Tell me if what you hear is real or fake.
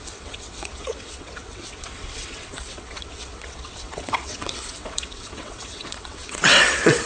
fake